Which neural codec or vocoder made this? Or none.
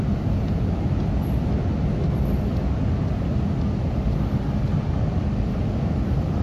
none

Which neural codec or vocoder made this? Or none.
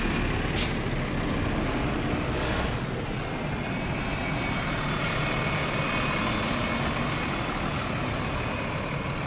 none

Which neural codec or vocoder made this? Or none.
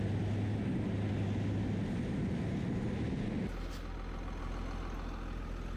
none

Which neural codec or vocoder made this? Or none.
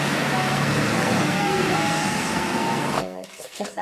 codec, SNAC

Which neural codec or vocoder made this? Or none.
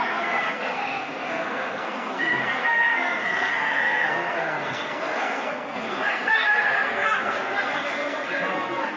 codec, SNAC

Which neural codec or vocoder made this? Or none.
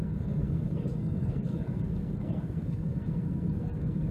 codec, SNAC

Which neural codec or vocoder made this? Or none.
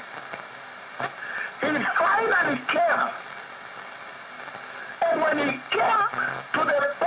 none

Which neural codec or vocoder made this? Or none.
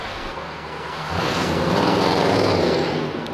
codec, SNAC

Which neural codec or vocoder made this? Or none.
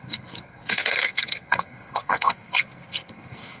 codec, SNAC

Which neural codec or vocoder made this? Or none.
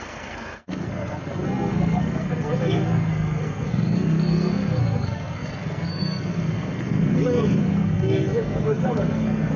codec, SNAC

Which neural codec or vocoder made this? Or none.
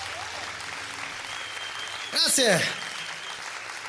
none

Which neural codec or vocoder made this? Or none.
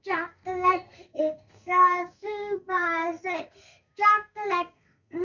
codec, SNAC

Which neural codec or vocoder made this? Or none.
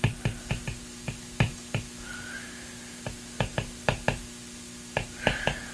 none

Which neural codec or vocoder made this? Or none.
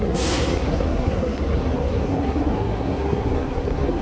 codec, SNAC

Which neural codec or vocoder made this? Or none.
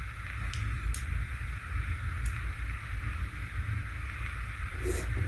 none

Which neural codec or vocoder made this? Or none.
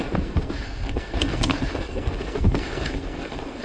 codec, SNAC